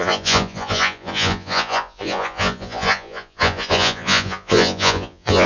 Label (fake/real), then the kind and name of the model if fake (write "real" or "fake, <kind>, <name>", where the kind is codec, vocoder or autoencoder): fake, vocoder, Vocos